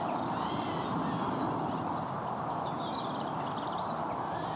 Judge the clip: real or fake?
fake